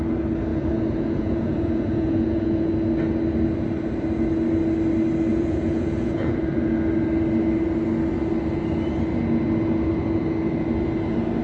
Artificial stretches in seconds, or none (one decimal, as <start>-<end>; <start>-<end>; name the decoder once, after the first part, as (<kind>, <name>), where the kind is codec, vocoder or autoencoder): 0.5-2.7 (vocoder, Vocos); 5.3-6.4